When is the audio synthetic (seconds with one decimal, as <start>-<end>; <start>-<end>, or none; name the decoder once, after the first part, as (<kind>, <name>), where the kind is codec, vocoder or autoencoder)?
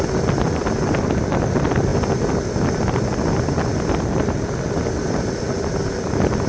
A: none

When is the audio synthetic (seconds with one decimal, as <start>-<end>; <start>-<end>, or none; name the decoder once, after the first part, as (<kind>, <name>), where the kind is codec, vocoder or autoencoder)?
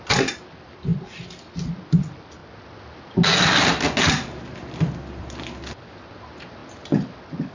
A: none